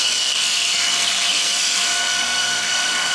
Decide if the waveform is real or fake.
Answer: fake